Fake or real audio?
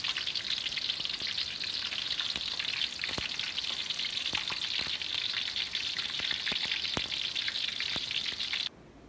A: real